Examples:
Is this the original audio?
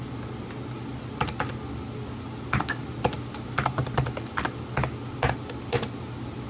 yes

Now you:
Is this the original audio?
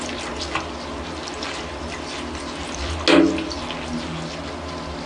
yes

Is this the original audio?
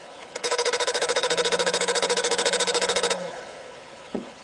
no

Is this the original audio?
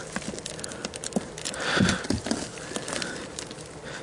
yes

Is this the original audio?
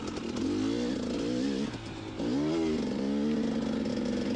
yes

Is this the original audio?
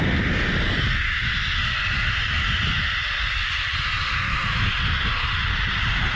yes